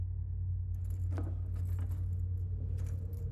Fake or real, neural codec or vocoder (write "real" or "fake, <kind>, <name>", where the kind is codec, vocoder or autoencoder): real